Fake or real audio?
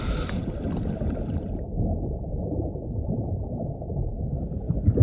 real